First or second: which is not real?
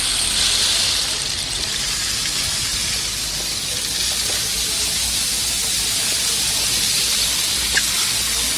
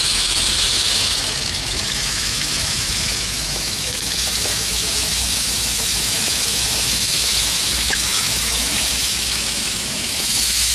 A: second